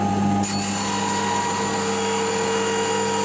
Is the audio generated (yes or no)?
no